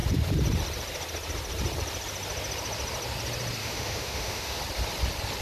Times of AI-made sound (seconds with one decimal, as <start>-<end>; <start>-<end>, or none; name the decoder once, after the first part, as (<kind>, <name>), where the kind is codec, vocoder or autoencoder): 3.6-4.6 (autoencoder, DAC-VAE)